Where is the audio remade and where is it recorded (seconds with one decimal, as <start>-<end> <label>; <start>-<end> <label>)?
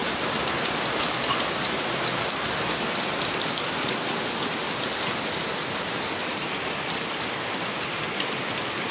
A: 0.0-8.9 recorded